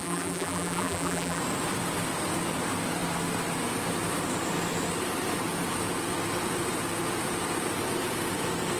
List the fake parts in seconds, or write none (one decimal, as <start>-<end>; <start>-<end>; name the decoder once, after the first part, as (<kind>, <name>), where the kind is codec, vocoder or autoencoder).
0.0-1.4 (vocoder, BigVGAN v2)